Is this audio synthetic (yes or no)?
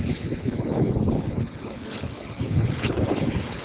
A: yes